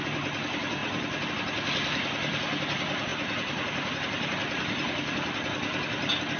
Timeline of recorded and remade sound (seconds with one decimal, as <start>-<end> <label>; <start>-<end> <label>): 0.0-6.4 recorded